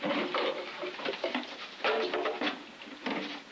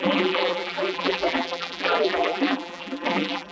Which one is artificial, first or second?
second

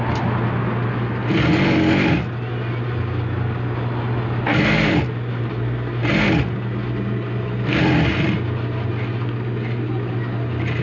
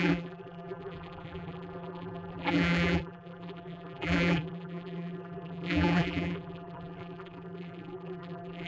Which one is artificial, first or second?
second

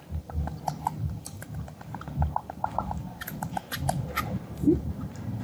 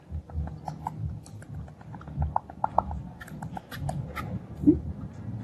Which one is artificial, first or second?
first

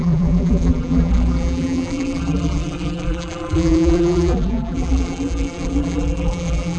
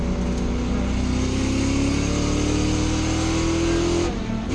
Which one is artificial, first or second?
first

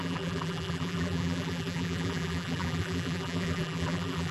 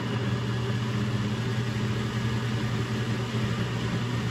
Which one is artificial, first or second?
first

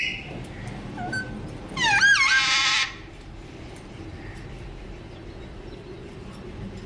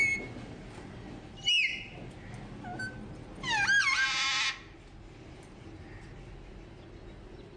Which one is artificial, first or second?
first